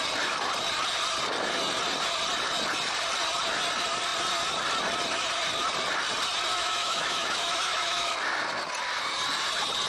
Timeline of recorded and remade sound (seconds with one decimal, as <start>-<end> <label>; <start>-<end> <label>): 0.0-6.5 recorded; 6.5-8.1 remade; 8.1-9.9 recorded